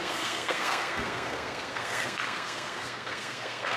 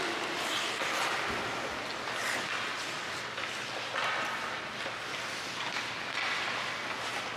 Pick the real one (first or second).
second